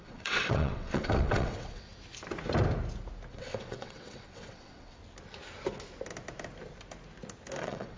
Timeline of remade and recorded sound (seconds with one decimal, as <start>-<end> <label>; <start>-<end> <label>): 0.0-1.9 remade; 1.9-3.3 recorded; 3.3-5.0 remade; 5.0-7.6 recorded; 7.6-8.0 remade